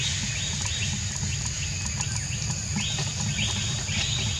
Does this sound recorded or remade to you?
recorded